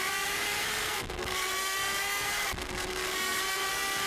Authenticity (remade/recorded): remade